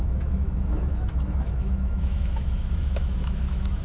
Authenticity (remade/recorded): remade